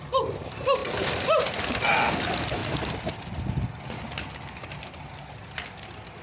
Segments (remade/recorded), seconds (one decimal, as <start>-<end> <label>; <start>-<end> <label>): 0.0-6.2 recorded